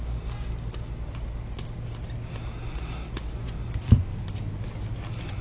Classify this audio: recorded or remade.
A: recorded